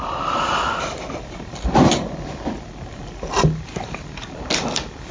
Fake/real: real